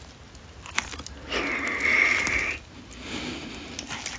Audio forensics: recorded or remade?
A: recorded